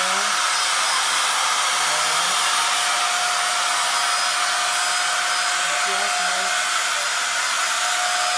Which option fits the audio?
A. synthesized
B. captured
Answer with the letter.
B